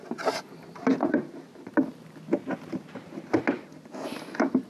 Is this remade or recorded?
recorded